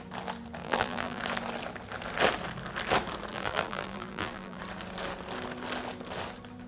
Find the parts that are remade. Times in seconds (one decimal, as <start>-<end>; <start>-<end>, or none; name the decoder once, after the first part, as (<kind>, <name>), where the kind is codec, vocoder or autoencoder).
0.6-1.2 (vocoder, BigVGAN v2); 3.3-4.6